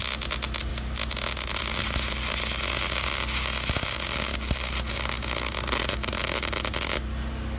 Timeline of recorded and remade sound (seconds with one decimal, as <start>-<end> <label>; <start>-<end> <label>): 0.0-7.6 recorded